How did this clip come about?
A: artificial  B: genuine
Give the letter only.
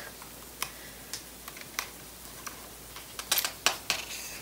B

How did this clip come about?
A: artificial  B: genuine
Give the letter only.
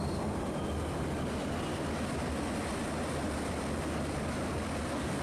B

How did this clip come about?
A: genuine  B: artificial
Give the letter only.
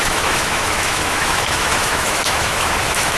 B